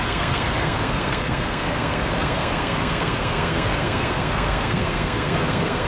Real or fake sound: fake